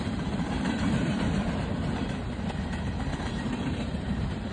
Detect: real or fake fake